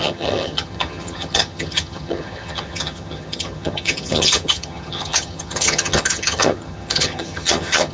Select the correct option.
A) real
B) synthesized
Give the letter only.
B